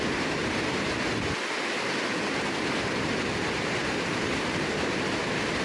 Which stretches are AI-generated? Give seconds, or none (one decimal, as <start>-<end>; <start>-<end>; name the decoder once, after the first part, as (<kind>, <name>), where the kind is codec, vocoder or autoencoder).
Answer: 0.0-0.4 (vocoder, BigVGAN v2); 3.8-5.6